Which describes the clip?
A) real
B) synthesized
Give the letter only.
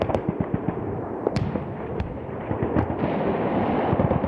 B